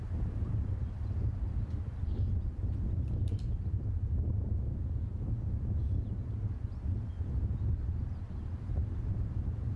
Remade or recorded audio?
remade